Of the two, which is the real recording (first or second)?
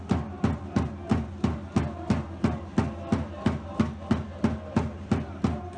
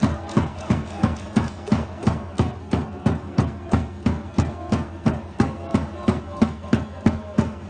first